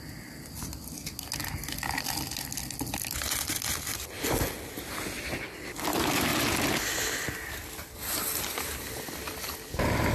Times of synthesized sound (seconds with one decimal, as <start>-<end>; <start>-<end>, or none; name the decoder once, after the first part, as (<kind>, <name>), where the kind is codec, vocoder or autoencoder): none